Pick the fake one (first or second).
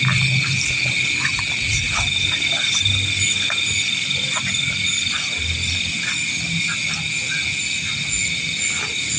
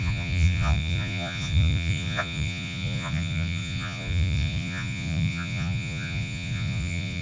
second